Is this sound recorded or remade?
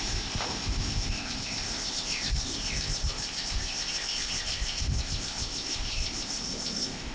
remade